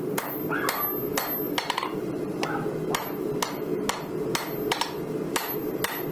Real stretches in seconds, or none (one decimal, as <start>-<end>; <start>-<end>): 0.0-6.1